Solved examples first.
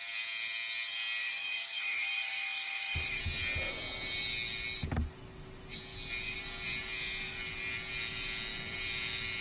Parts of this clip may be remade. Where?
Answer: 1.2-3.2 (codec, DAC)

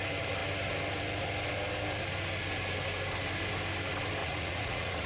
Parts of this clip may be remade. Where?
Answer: 4.2-5.1 (vocoder, Vocos)